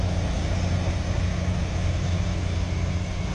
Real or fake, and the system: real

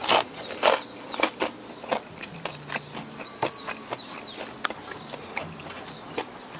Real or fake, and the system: real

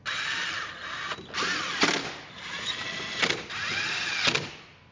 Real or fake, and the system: real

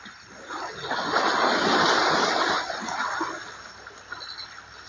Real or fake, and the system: real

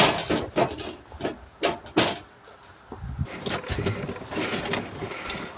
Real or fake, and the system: real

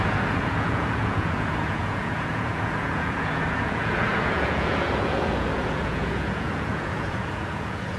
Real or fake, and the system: fake, vocoder, Vocos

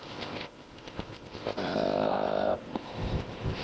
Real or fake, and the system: fake, codec, ZipCodec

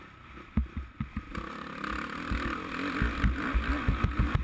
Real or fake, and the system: real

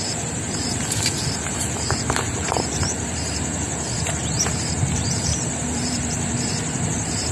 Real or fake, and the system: fake, vocoder, BigVGAN v2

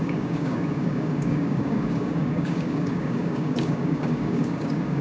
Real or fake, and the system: fake, codec, DAC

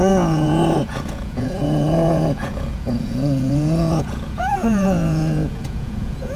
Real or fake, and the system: fake, vocoder, Vocos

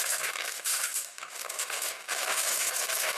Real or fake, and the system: fake, codec, DAC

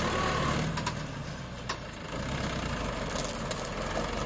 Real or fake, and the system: real